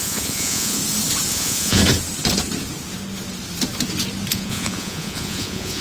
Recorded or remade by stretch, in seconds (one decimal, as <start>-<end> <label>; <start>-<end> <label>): 0.0-0.8 remade; 0.8-1.3 recorded; 1.3-1.8 remade; 1.8-4.3 recorded; 4.3-5.8 remade